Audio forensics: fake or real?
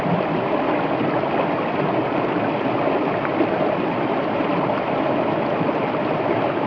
real